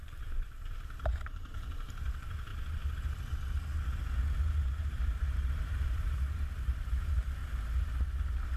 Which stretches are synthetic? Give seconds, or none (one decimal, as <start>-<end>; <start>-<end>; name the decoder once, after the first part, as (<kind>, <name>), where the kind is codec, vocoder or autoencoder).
0.0-2.5 (vocoder, BigVGAN v2); 4.7-7.4